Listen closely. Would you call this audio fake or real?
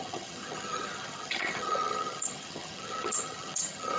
fake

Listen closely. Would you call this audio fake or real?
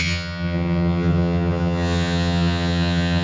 fake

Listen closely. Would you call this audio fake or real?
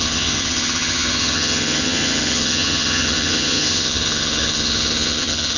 fake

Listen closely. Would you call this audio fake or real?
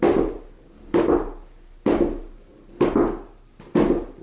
real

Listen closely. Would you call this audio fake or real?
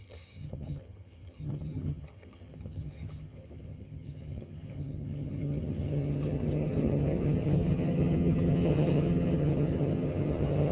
fake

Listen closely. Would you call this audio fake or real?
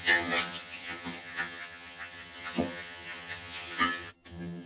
fake